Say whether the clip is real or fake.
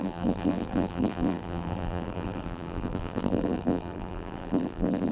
fake